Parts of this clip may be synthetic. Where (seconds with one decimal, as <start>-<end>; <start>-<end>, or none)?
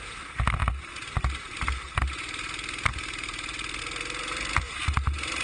none